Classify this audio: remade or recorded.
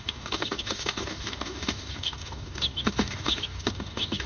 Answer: remade